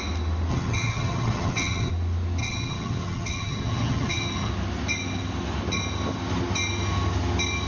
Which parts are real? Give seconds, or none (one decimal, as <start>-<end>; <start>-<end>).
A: 0.0-0.5; 1.9-2.4; 4.5-7.7

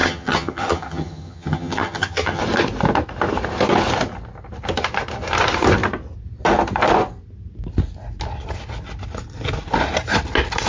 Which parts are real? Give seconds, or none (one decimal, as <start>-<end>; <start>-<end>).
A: 2.4-10.7